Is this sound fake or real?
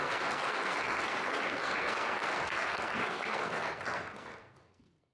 fake